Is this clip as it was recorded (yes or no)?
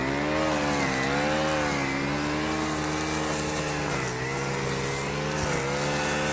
yes